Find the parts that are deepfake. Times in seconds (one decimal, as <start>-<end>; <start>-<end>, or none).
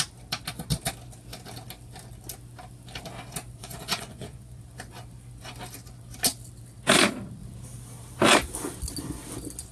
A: 3.6-4.6